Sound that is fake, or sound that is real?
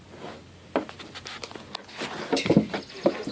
real